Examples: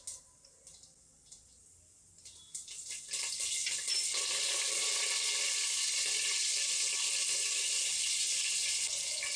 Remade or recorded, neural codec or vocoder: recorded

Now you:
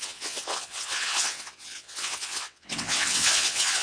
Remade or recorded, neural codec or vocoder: remade, vocoder, WaveNeXt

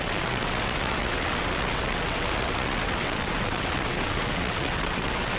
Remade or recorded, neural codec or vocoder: remade, vocoder, WaveNeXt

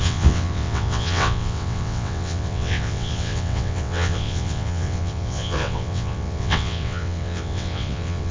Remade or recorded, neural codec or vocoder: remade, vocoder, WaveNeXt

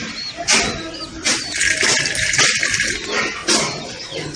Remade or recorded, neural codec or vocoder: recorded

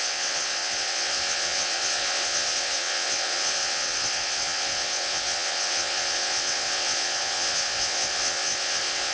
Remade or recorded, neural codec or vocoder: remade, vocoder, WaveNeXt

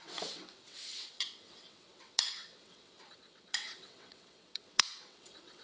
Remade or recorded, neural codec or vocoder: remade, vocoder, WaveNeXt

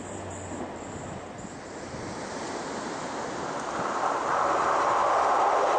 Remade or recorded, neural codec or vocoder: recorded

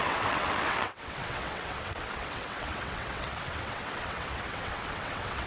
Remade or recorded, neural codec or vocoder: remade, vocoder, WaveNeXt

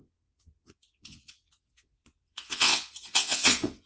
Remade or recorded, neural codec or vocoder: remade, vocoder, WaveNeXt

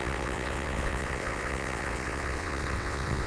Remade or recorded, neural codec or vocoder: remade, vocoder, WaveNeXt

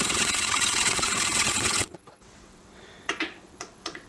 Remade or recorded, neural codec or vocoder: remade, vocoder, WaveNeXt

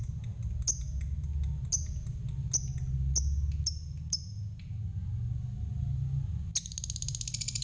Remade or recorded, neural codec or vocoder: recorded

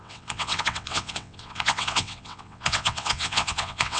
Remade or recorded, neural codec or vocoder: remade, vocoder, WaveNeXt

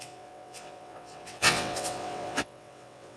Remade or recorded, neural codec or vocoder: remade, vocoder, WaveNeXt